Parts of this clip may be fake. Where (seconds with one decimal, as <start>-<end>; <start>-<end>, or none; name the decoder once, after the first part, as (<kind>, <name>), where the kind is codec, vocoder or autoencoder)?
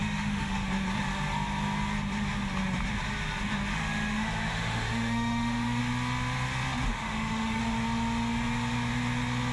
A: 0.0-0.6 (autoencoder, DAC-VAE); 3.7-5.8; 6.9-7.6